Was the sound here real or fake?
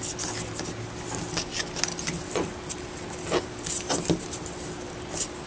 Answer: real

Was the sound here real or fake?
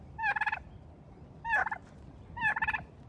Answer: real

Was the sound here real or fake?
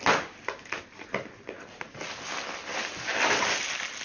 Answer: real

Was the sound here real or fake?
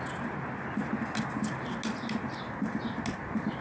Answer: real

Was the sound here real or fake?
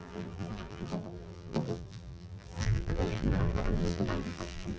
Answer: fake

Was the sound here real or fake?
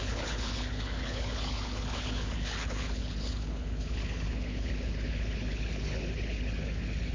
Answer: fake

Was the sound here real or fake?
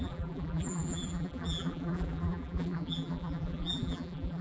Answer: fake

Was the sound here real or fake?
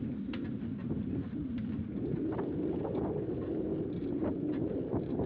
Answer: real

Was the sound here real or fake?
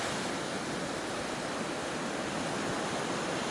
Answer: real